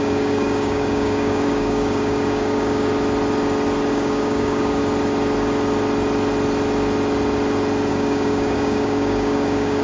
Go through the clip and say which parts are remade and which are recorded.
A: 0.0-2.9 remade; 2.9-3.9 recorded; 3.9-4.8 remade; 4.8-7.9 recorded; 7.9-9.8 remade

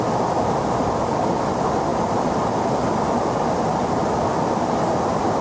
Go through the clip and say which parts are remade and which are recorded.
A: 0.0-5.4 recorded

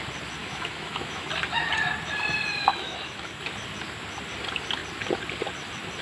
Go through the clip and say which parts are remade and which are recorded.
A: 0.0-0.4 recorded; 0.4-1.3 remade; 1.3-2.7 recorded; 2.7-3.4 remade; 3.4-6.0 recorded

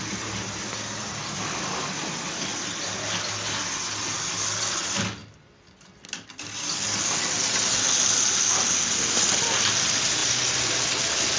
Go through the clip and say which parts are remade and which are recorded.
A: 0.0-11.4 recorded